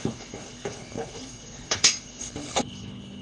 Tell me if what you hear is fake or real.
fake